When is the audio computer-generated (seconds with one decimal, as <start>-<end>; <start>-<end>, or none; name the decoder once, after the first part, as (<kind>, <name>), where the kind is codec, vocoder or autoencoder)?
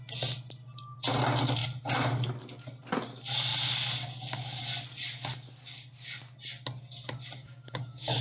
7.4-8.2 (codec, DAC)